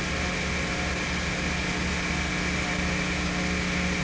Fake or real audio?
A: real